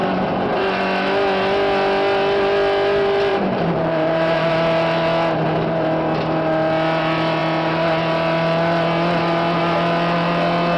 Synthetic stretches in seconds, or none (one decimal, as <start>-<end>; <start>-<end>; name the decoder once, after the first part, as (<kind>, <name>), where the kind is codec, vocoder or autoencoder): 3.3-4.5 (vocoder, BigVGAN v2)